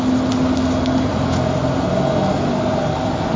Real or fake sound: real